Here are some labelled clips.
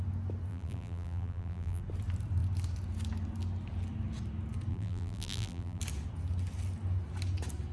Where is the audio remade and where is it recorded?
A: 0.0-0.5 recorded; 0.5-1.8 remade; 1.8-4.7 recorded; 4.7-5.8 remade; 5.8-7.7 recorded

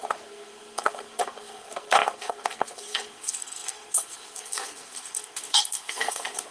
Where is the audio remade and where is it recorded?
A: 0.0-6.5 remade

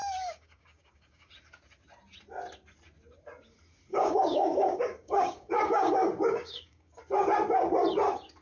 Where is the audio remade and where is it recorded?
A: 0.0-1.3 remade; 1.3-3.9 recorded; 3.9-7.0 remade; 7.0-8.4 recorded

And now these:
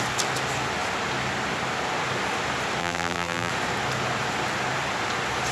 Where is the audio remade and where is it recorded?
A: 0.0-2.8 recorded; 2.8-3.5 remade; 3.5-5.5 recorded